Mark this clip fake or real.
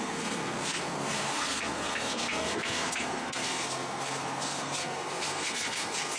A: fake